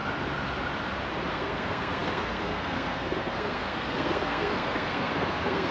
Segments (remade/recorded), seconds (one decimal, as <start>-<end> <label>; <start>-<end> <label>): 0.0-1.3 recorded; 1.3-5.7 remade